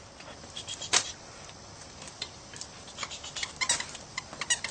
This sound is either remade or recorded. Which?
recorded